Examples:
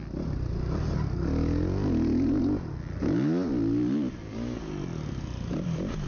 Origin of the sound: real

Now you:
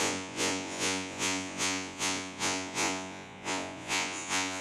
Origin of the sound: fake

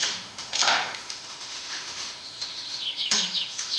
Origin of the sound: fake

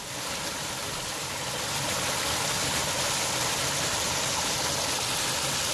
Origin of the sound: real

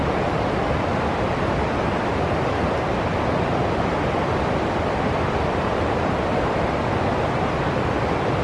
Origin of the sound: real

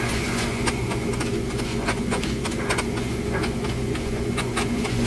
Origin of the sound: fake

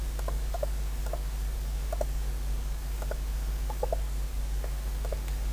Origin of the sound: fake